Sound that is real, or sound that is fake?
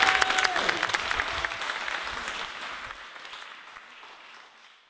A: real